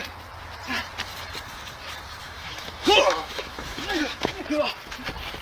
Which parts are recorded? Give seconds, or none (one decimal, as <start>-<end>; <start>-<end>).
0.0-2.2; 4.4-5.4